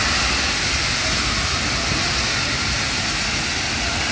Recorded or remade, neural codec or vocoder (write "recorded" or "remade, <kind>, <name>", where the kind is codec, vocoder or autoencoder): recorded